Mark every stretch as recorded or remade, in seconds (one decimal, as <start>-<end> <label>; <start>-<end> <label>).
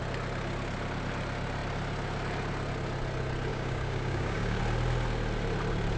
0.0-3.5 recorded; 3.5-4.6 remade; 4.6-6.0 recorded